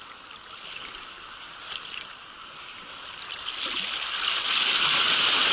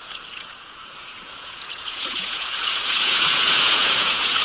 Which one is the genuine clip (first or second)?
first